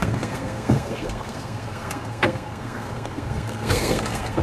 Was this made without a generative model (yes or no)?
no